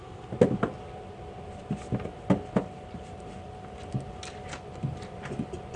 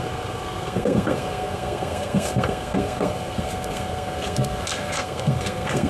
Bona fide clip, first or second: first